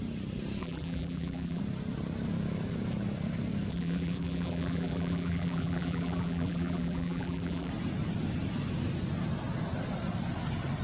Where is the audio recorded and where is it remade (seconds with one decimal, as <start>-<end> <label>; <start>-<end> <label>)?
0.0-0.6 recorded; 0.6-1.6 remade; 1.6-3.7 recorded; 3.7-7.7 remade; 7.7-10.8 recorded